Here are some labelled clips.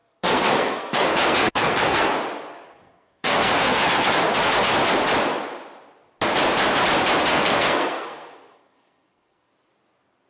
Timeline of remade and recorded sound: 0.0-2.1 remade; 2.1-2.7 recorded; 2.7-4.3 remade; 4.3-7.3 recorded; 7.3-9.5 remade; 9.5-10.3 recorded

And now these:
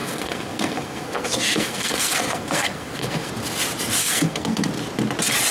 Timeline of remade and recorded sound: 0.0-3.3 remade; 3.3-4.0 recorded; 4.0-4.7 remade; 4.7-5.5 recorded

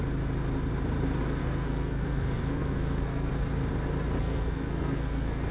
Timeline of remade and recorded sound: 0.0-1.4 recorded; 1.4-3.3 remade; 3.3-4.2 recorded; 4.2-5.5 remade

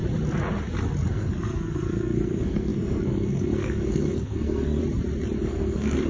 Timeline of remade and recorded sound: 0.0-1.1 recorded; 1.1-4.8 remade; 4.8-5.4 recorded; 5.4-6.1 remade

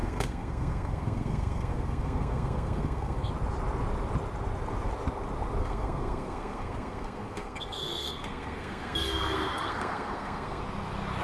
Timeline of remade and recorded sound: 0.0-3.3 remade; 3.3-5.6 recorded; 5.6-10.6 remade; 10.6-11.2 recorded